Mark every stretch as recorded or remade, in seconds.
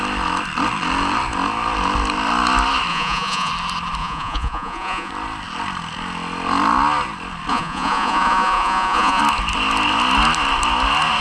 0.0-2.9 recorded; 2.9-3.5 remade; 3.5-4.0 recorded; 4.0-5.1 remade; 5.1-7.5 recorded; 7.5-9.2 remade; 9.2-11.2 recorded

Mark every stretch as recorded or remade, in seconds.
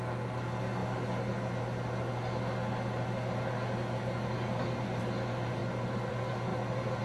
0.0-7.0 recorded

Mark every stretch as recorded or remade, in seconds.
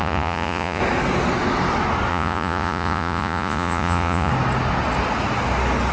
0.0-0.8 remade; 0.8-2.1 recorded; 2.1-4.3 remade; 4.3-5.9 recorded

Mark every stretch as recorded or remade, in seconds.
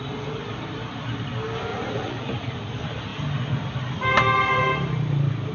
0.0-1.7 recorded; 1.7-2.5 remade; 2.5-5.5 recorded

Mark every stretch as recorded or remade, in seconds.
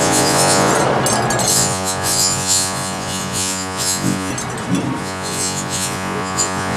0.0-0.7 remade; 0.7-1.5 recorded; 1.5-4.3 remade; 4.3-5.0 recorded; 5.0-6.8 remade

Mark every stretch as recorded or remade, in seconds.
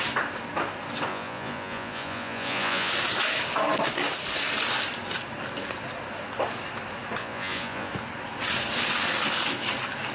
0.0-1.1 recorded; 1.1-2.9 remade; 2.9-7.2 recorded; 7.2-7.9 remade; 7.9-10.1 recorded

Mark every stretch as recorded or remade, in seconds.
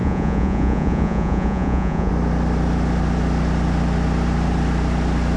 0.0-2.1 remade; 2.1-5.4 recorded